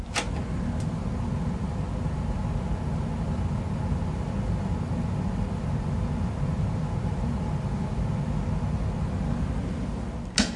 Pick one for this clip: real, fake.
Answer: real